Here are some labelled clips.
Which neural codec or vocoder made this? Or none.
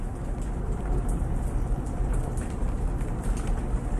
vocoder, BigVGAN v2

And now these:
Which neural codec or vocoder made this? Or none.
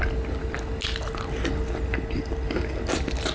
none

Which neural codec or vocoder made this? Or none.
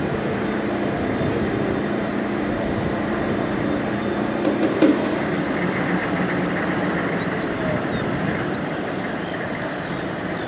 none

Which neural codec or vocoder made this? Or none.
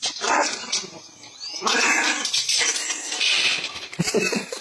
none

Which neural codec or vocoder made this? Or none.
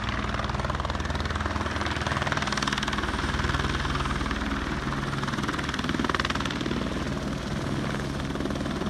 none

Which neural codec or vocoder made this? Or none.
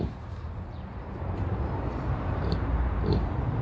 vocoder, BigVGAN v2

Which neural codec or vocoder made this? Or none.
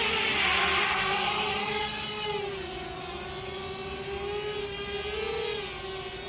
none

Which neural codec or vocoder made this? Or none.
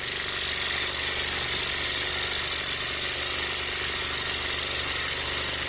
none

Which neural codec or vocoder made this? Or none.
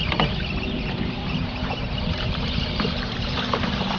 vocoder, BigVGAN v2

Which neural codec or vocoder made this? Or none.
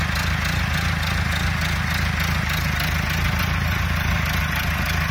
none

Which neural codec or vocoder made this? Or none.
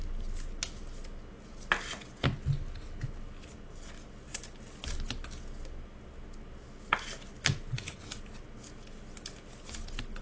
none